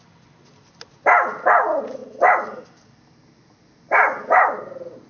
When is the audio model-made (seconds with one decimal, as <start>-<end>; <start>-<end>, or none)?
none